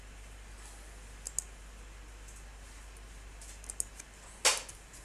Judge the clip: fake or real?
real